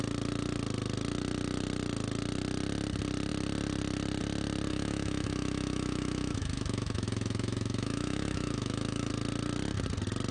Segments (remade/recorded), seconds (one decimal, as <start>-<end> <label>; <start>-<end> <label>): 0.0-4.7 recorded; 4.7-9.1 remade; 9.1-10.3 recorded